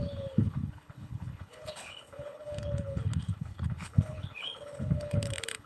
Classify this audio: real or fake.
fake